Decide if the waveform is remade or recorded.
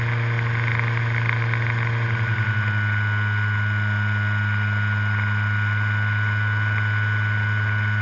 recorded